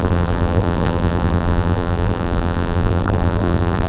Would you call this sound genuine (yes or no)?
no